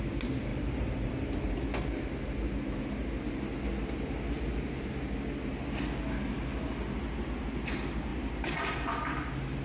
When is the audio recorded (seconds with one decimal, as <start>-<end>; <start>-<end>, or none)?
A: 0.0-0.5; 1.1-8.1; 8.9-9.6